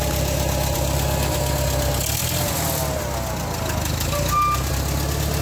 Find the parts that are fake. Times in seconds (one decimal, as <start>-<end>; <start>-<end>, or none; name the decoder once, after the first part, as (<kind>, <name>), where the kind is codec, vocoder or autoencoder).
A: none